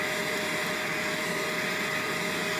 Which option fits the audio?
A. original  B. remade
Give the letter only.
A